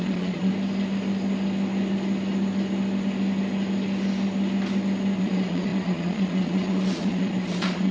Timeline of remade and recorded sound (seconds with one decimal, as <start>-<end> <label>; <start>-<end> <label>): 0.0-0.5 remade; 0.5-5.2 recorded; 5.2-7.9 remade